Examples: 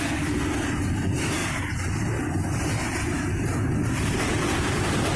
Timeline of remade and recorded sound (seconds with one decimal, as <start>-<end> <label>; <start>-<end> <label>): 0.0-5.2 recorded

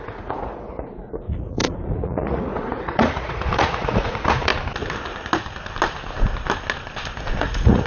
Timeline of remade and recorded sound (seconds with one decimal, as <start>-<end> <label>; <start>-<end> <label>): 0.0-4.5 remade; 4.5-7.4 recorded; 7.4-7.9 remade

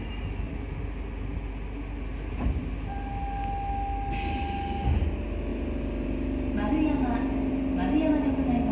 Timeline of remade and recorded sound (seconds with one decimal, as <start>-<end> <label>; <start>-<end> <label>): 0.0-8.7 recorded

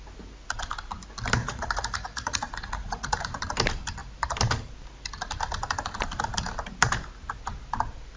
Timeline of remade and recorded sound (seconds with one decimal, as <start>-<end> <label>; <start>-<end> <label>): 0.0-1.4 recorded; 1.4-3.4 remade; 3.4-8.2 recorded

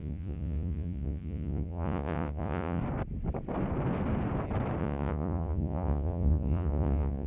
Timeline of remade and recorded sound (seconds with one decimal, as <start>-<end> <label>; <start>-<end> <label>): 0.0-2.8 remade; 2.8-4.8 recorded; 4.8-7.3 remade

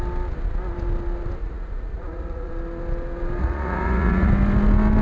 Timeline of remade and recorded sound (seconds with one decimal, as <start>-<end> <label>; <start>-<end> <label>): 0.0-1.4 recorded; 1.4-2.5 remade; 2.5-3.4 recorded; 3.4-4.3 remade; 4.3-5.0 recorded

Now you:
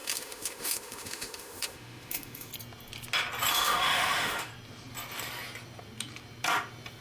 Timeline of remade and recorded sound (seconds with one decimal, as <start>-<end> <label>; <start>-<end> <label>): 0.0-2.5 remade; 2.5-3.5 recorded; 3.5-4.5 remade; 4.5-7.0 recorded